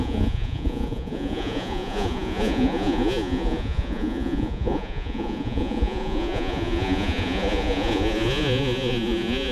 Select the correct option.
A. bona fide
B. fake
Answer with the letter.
B